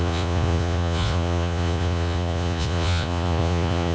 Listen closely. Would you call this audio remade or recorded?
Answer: remade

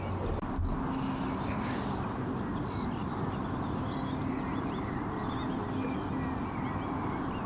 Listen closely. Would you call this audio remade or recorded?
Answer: recorded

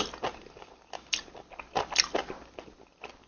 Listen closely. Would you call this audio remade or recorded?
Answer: recorded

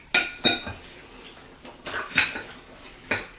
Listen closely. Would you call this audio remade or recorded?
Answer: recorded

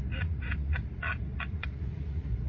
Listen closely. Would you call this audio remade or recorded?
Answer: remade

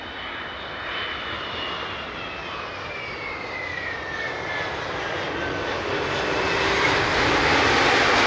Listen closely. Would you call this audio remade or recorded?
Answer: recorded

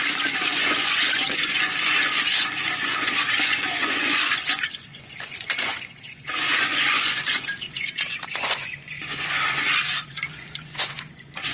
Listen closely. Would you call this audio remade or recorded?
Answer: remade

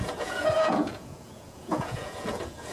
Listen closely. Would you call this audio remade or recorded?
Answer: remade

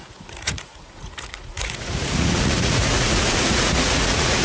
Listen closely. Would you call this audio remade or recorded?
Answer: remade